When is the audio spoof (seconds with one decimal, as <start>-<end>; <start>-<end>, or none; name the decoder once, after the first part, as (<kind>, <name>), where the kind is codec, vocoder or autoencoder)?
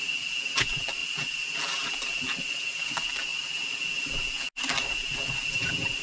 none